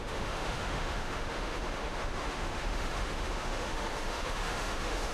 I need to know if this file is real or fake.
fake